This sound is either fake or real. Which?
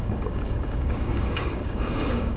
fake